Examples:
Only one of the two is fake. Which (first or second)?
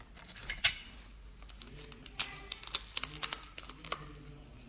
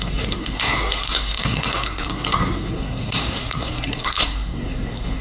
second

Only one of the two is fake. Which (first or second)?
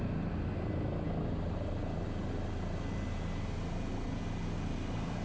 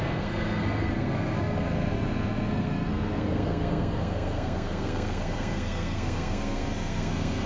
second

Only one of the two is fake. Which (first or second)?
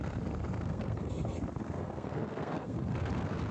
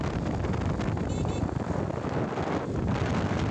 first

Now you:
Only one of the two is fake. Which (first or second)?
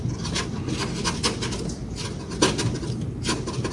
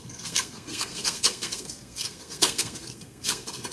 second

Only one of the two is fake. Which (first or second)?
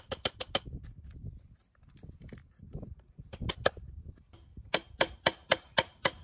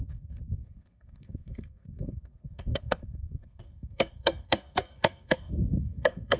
second